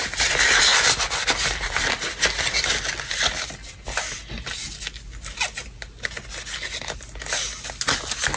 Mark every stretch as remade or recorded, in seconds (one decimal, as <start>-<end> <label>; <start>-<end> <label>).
0.0-8.4 recorded